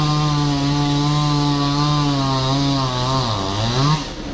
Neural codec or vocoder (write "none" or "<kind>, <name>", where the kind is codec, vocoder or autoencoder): none